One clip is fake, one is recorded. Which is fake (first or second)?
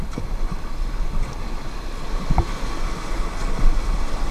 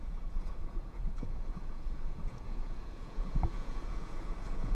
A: second